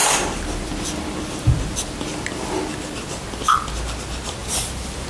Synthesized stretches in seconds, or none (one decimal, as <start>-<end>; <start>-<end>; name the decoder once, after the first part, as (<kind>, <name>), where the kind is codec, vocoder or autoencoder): 0.0-0.7 (vocoder, BigVGAN v2); 4.4-5.1